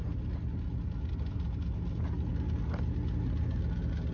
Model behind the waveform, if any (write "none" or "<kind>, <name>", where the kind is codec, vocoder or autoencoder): none